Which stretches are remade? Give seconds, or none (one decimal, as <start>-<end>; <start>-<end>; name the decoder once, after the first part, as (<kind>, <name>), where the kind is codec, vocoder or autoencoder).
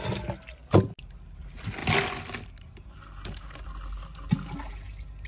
none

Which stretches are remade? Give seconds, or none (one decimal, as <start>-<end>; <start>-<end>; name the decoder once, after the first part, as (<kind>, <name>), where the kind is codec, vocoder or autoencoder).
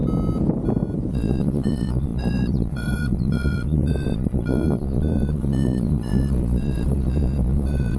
1.1-8.0 (vocoder, Vocos)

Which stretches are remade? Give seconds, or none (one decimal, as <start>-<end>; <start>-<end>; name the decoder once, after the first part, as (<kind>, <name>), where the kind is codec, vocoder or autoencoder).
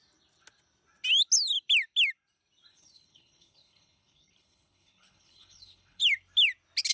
2.7-6.0 (codec, HILCodec)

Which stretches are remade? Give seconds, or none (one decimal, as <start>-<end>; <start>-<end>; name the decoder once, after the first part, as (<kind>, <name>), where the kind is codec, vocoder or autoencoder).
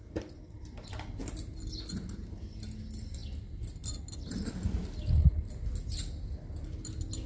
none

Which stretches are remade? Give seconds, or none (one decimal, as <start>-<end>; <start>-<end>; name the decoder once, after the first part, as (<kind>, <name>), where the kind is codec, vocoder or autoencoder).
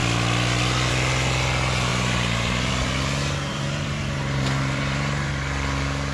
1.9-2.7 (vocoder, BigVGAN v2); 3.5-5.3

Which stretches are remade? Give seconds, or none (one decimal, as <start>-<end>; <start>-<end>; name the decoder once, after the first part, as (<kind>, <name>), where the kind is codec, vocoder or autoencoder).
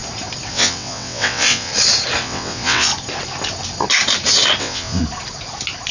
0.5-1.7 (vocoder, WaveNeXt); 2.2-2.9; 4.6-5.0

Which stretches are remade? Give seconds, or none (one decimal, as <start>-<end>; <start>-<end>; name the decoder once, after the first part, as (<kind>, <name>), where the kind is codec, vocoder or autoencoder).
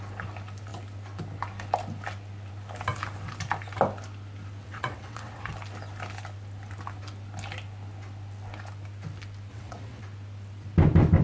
4.6-5.5 (vocoder, WaveNeXt); 9.5-10.0